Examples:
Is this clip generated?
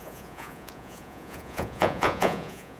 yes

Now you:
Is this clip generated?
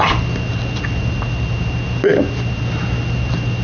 no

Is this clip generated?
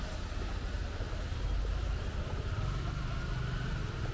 no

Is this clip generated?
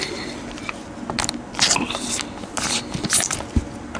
no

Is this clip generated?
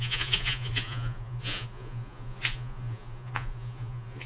yes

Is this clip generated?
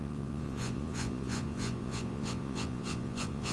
yes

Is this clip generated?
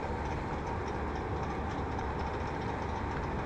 no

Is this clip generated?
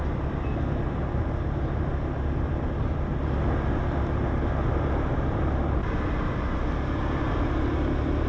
no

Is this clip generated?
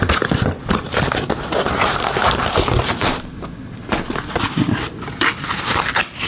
no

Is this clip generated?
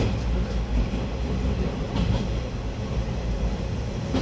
no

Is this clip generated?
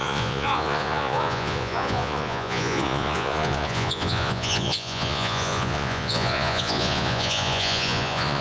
yes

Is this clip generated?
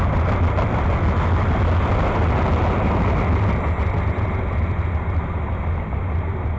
no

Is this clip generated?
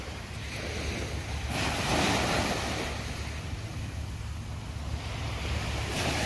no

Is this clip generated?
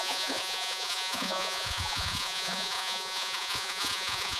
yes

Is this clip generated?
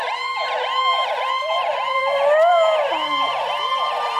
no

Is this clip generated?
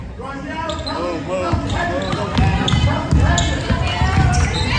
no